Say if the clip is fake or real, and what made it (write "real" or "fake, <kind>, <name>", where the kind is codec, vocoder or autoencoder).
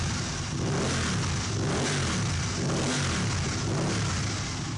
real